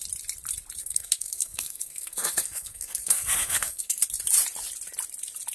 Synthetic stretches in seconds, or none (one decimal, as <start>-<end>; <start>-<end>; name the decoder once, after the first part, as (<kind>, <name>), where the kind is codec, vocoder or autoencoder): 0.8-4.0 (codec, SNAC)